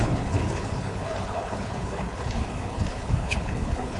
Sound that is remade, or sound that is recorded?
remade